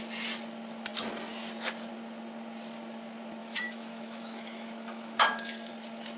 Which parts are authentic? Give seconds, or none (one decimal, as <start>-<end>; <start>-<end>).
0.0-3.4; 5.7-6.2